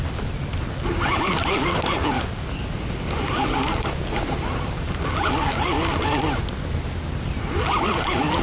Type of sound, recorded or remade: recorded